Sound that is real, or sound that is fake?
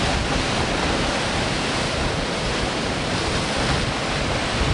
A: real